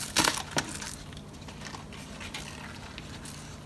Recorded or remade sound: recorded